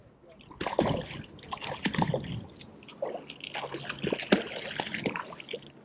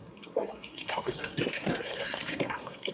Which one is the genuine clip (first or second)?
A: first